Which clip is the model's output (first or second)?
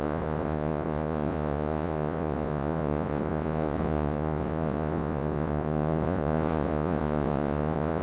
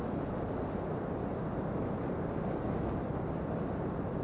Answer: first